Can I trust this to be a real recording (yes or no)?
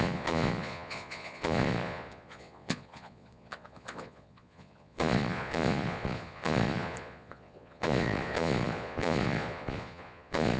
no